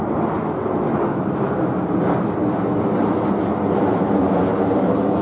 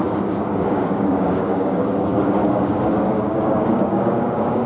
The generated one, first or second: second